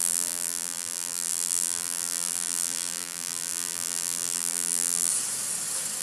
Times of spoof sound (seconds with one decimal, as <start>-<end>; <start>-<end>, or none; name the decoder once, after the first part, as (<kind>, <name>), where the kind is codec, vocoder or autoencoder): 0.0-5.1 (vocoder, BigVGAN v2)